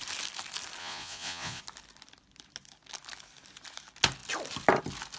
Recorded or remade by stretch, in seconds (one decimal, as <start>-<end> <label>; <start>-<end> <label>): 0.0-0.8 recorded; 0.8-1.6 remade; 1.6-5.2 recorded